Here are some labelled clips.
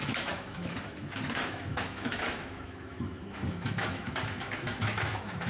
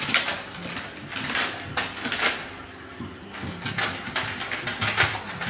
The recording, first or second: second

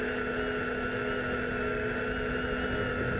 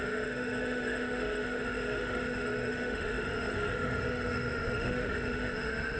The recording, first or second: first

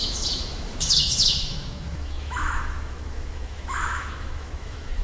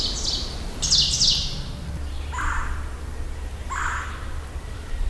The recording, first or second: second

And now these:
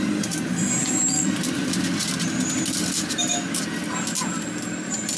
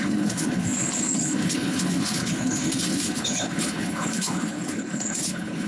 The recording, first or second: first